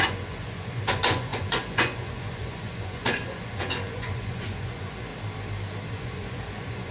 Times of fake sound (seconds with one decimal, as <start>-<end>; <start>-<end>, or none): 0.0-5.1; 5.9-6.9